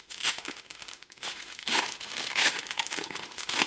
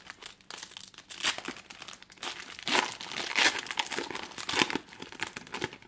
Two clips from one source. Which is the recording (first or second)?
second